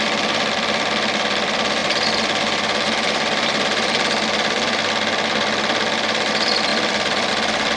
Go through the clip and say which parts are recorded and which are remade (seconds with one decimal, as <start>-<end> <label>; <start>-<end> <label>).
0.0-1.8 recorded; 1.8-6.3 remade; 6.3-6.7 recorded; 6.7-7.3 remade; 7.3-7.8 recorded